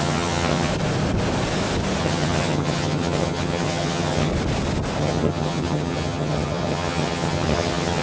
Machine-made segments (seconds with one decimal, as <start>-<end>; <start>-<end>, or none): 0.0-0.7; 2.0-4.3; 5.0-8.0